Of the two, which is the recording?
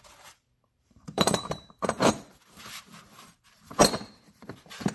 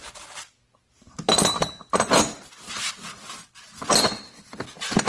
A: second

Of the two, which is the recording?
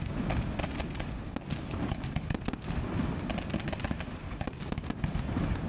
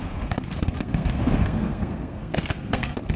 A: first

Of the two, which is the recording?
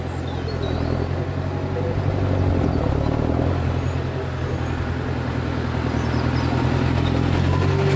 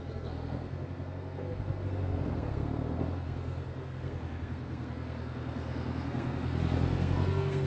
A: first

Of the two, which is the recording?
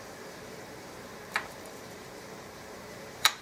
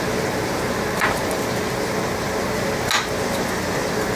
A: second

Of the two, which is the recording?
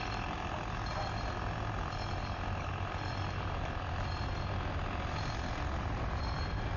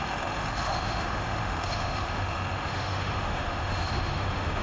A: first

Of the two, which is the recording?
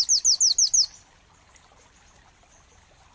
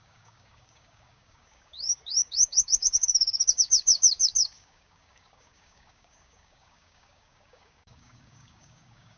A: first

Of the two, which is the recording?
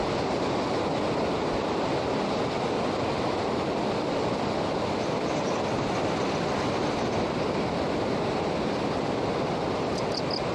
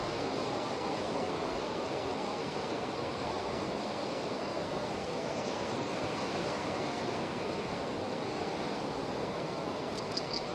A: first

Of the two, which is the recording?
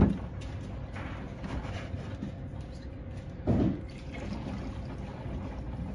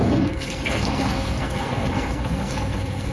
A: first